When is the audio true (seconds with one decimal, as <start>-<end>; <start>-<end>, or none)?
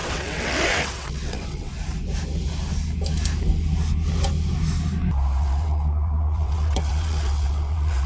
1.7-5.4